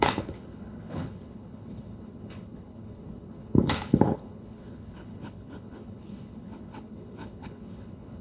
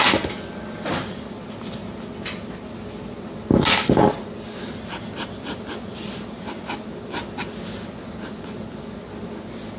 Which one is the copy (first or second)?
first